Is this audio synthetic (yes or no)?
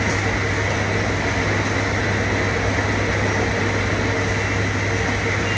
no